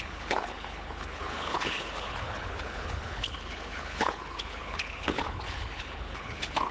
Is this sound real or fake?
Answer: fake